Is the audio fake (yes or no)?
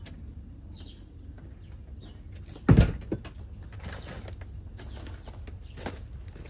no